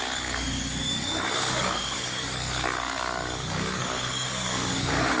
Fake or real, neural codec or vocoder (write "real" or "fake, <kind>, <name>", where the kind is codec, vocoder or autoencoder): fake, codec, DAC